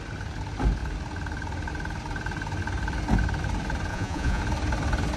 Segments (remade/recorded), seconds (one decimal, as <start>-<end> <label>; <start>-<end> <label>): 0.0-3.9 recorded; 3.9-4.4 remade; 4.4-5.2 recorded